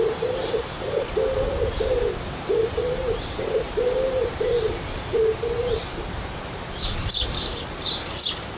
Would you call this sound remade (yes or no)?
yes